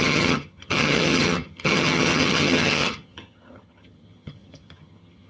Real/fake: fake